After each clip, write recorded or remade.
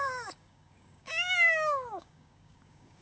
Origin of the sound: remade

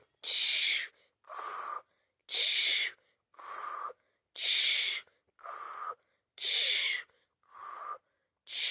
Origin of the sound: recorded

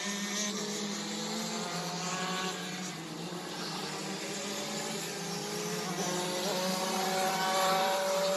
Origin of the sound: recorded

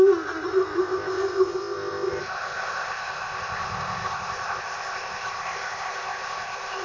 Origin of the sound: remade